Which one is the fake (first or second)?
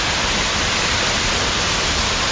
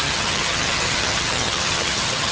second